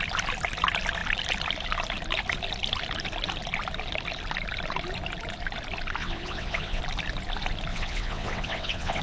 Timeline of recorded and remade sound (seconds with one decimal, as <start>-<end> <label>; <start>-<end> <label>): 0.0-6.0 recorded; 6.0-6.8 remade; 6.8-7.7 recorded; 7.7-9.0 remade